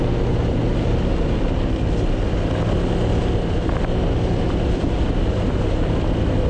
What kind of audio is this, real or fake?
real